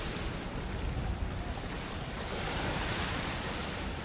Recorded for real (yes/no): no